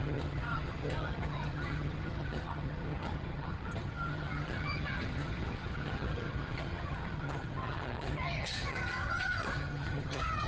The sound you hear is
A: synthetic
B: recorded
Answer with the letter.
A